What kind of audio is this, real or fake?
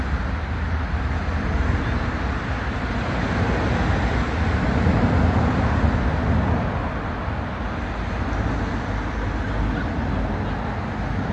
real